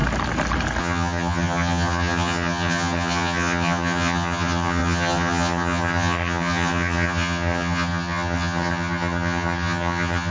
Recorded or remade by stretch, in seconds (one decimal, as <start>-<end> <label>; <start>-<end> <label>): 0.0-0.8 recorded; 0.8-10.3 remade